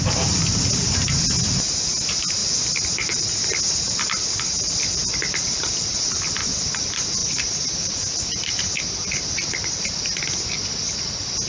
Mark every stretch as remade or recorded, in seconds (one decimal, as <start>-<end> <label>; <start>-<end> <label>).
0.0-7.2 recorded; 7.2-8.7 remade; 8.7-11.5 recorded